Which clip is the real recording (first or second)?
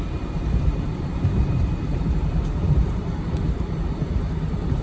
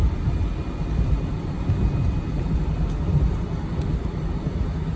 second